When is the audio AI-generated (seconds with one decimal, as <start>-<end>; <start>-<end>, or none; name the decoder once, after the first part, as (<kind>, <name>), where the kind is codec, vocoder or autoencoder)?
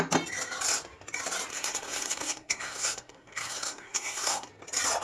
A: 1.5-4.5 (codec, SNAC)